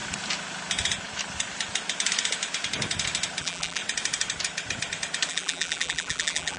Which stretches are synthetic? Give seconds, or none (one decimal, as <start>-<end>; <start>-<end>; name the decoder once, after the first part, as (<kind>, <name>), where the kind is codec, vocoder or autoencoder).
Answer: 3.4-3.8 (vocoder, BigVGAN v2); 5.3-6.6